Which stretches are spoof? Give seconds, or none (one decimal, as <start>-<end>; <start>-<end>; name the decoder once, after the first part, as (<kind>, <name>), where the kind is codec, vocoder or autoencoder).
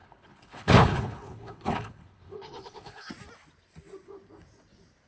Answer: 0.0-3.1 (codec, HILCodec)